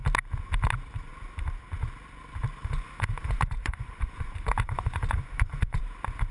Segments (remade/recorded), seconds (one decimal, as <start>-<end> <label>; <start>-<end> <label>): 0.0-2.6 recorded; 2.6-5.8 remade; 5.8-6.3 recorded